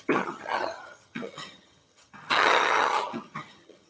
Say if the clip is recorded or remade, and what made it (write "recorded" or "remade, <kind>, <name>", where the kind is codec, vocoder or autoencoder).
remade, vocoder, HiFi-GAN